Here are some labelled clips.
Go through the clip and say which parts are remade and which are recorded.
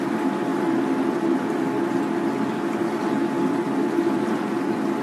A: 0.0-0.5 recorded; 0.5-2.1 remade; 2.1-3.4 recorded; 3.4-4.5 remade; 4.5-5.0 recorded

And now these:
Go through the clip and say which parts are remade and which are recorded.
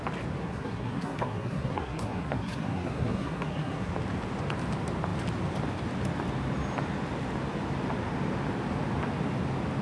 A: 0.0-0.4 recorded; 0.4-3.9 remade; 3.9-9.8 recorded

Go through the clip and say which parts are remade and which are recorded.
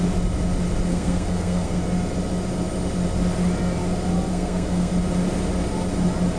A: 0.0-0.9 recorded; 0.9-1.8 remade; 1.8-4.3 recorded; 4.3-4.9 remade; 4.9-6.4 recorded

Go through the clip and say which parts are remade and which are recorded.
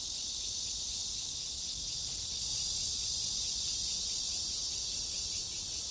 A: 0.0-5.9 recorded